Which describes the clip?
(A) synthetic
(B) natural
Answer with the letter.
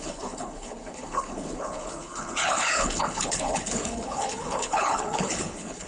A